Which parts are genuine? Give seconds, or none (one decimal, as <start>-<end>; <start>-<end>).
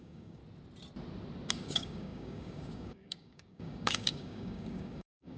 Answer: 0.4-1.5